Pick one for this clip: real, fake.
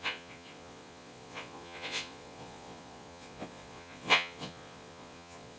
fake